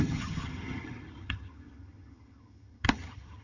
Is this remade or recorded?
remade